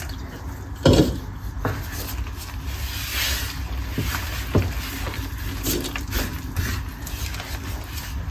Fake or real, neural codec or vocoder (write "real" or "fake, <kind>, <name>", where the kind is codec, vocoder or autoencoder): real